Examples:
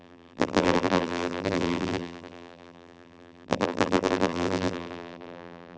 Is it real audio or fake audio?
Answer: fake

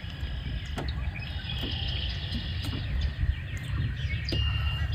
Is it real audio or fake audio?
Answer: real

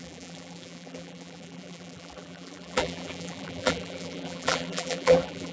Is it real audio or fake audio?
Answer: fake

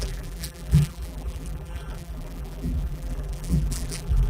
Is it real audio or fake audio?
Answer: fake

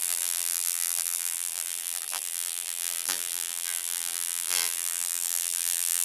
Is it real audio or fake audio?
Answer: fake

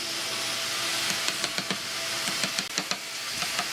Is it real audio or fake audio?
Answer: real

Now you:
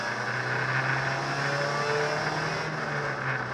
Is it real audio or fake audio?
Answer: real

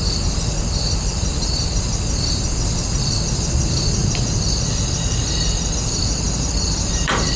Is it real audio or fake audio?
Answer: fake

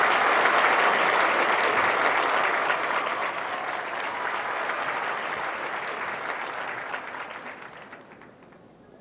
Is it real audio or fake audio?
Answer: real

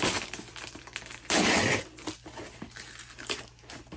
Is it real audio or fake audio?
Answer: real